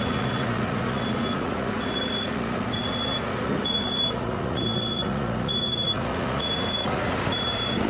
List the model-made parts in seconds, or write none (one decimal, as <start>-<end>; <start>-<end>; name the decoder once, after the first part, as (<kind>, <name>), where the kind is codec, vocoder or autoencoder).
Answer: 0.0-7.9 (vocoder, Vocos)